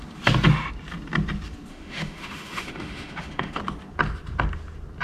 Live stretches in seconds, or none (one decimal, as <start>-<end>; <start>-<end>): 0.0-1.7; 3.6-5.0